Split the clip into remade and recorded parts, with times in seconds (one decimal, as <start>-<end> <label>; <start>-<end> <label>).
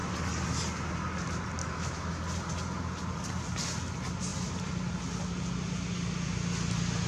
0.0-1.6 recorded; 1.6-2.2 remade; 2.2-7.1 recorded